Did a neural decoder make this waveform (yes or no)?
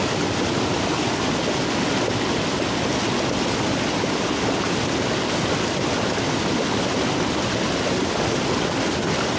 no